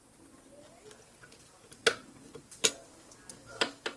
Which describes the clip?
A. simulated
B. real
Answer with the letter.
B